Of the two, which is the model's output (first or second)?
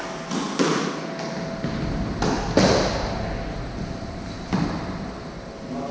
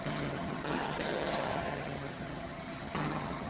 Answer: second